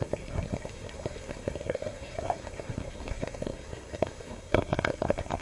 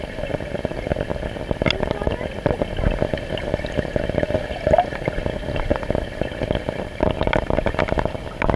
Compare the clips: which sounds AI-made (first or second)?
first